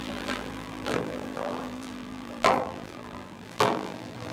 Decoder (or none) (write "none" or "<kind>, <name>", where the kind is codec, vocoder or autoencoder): vocoder, BigVGAN v2